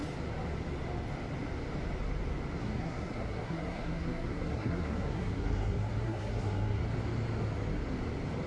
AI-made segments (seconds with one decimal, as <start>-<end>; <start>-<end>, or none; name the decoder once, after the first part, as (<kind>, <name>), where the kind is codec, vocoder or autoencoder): 2.6-6.8 (codec, SNAC)